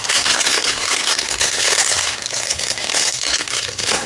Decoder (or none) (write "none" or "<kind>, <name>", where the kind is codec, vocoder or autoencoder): codec, SNAC